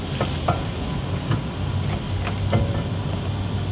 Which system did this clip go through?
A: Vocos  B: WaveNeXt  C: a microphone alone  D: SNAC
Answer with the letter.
C